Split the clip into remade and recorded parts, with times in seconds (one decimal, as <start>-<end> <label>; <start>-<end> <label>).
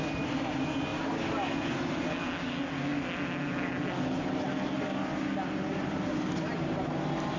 0.0-7.4 recorded